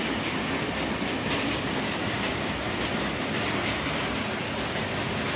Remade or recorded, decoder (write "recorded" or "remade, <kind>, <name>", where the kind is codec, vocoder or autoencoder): recorded